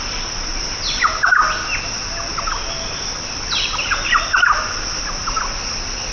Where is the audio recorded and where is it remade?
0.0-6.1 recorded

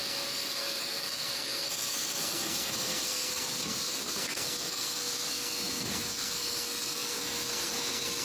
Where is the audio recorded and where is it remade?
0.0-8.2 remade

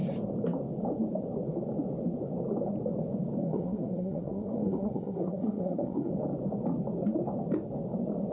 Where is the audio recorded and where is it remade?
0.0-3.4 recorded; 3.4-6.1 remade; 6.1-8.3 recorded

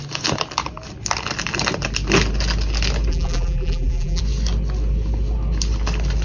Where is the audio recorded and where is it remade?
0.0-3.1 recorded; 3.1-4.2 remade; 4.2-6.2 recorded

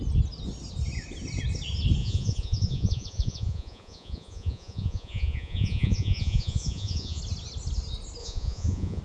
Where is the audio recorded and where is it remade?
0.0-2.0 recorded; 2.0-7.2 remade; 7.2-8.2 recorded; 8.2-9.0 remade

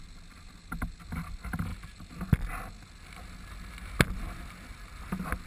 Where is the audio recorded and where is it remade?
0.0-5.5 recorded

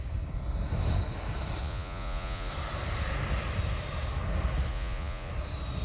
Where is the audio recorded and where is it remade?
0.0-1.6 recorded; 1.6-2.5 remade; 2.5-4.7 recorded; 4.7-5.3 remade; 5.3-5.8 recorded